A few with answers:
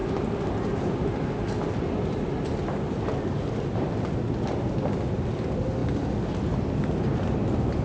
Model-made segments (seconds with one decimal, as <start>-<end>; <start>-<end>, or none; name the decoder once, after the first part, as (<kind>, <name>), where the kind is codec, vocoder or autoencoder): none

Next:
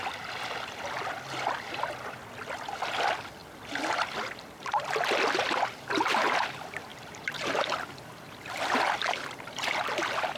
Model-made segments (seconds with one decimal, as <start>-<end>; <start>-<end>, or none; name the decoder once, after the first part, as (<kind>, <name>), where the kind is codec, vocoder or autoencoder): 6.9-8.8 (vocoder, BigVGAN v2)

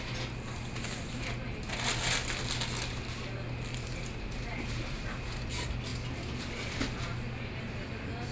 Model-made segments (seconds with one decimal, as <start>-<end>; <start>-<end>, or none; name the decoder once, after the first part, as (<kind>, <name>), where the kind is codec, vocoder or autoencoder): 4.5-5.5 (vocoder, BigVGAN v2)

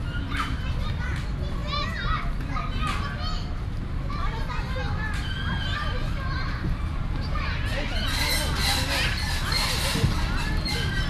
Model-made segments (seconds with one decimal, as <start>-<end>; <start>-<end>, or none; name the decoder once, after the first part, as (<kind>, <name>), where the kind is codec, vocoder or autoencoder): none